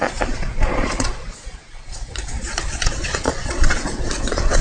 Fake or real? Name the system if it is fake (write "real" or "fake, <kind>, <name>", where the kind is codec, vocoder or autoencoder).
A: fake, vocoder, Vocos